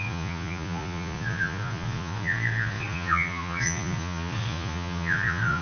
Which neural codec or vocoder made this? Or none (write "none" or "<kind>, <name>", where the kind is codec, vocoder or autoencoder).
vocoder, Vocos